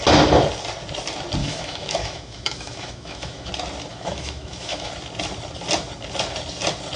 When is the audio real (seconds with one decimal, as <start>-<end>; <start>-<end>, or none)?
0.0-1.4; 3.5-3.9; 4.9-7.0